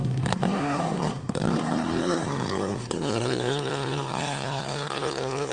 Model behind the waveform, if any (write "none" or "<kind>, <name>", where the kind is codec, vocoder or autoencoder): codec, SNAC